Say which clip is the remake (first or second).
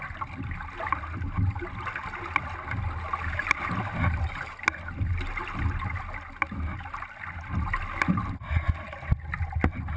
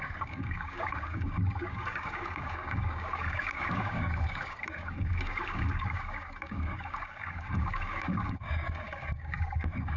second